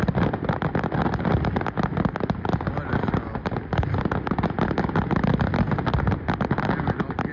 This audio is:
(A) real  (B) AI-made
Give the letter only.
A